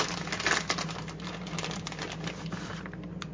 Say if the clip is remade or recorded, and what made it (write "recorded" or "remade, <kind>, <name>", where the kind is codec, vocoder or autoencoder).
recorded